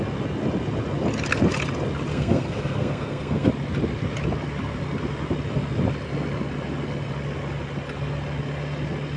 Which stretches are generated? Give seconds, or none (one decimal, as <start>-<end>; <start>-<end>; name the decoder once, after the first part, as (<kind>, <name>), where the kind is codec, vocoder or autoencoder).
2.1-3.5 (codec, SNAC)